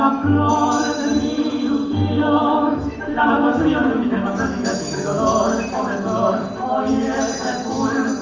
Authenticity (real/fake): fake